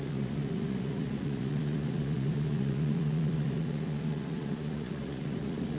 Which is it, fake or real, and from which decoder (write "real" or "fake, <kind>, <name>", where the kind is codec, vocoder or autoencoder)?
fake, vocoder, Vocos